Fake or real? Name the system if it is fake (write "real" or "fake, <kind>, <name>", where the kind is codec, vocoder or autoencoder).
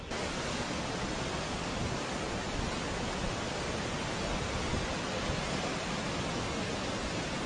real